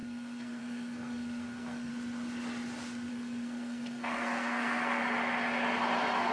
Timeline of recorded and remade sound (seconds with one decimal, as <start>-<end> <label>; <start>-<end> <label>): 0.0-1.9 remade; 1.9-3.1 recorded; 3.1-5.0 remade; 5.0-6.3 recorded